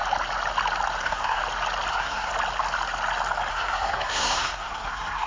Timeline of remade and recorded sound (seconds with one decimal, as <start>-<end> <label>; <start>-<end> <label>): 0.0-1.0 recorded; 1.0-1.4 remade; 1.4-1.9 recorded; 1.9-2.3 remade; 2.3-3.5 recorded; 3.5-5.3 remade